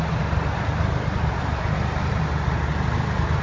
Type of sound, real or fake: real